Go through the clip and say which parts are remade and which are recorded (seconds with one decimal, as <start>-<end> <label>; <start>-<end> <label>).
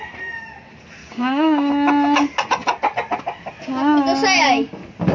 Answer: 0.0-1.0 recorded; 1.0-1.7 remade; 1.7-5.1 recorded